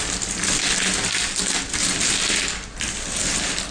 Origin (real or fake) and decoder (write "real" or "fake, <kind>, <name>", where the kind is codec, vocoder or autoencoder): real